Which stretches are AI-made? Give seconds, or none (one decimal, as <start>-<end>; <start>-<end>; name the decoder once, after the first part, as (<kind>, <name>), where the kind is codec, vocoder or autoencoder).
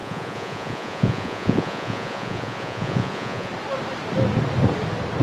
0.0-3.5 (vocoder, Vocos)